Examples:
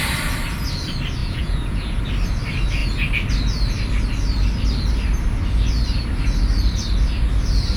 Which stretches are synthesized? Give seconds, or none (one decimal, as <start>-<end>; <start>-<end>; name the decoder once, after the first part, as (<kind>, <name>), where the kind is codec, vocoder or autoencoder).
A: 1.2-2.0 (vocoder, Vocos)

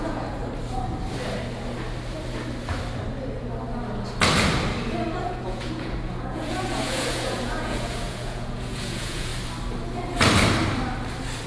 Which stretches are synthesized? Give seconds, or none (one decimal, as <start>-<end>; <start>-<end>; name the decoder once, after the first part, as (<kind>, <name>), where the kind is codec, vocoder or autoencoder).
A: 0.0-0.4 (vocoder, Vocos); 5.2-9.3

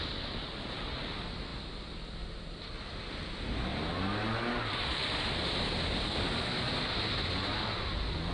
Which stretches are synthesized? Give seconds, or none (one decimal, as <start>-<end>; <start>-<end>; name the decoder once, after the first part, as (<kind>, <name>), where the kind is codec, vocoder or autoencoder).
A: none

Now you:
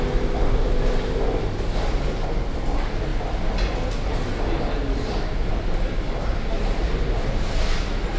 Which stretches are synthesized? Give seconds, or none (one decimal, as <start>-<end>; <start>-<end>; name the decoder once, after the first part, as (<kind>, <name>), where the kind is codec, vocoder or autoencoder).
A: none

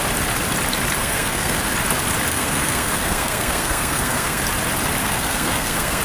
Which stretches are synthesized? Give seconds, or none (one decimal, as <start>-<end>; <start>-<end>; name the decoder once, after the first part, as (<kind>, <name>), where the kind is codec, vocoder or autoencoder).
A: 1.0-1.6 (codec, SNAC); 2.3-4.4; 5.0-6.0

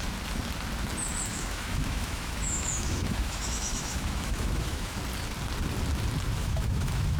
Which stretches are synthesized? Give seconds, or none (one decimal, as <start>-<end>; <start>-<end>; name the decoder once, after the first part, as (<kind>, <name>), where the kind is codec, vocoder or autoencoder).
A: 1.3-5.0 (autoencoder, DAC-VAE); 6.4-7.2